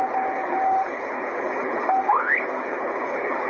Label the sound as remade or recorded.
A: remade